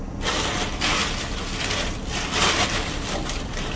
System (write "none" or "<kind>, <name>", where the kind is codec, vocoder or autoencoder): none